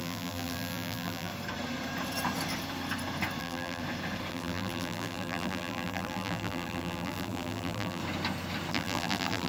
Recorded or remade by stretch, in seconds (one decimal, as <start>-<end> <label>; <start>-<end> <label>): 0.0-1.3 remade; 1.3-3.4 recorded; 3.4-3.8 remade; 3.8-4.3 recorded; 4.3-8.0 remade; 8.0-8.7 recorded; 8.7-9.5 remade